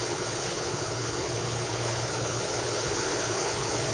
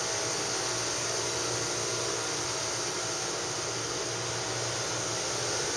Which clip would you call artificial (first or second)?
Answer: first